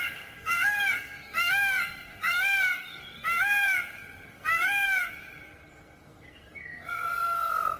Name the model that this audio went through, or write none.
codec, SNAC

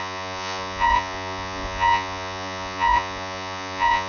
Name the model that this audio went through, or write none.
vocoder, Vocos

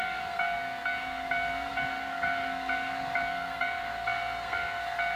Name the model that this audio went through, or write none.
codec, SNAC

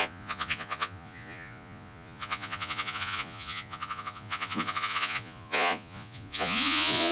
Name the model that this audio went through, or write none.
vocoder, Vocos